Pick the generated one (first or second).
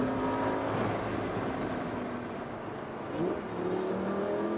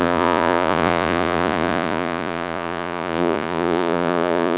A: second